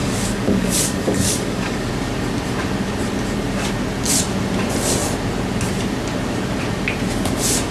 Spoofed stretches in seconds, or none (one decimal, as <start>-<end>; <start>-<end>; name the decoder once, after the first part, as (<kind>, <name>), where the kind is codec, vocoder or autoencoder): 0.0-1.9 (codec, DAC)